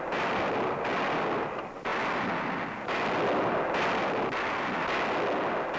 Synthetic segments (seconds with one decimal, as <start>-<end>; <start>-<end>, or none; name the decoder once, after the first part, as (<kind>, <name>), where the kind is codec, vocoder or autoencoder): none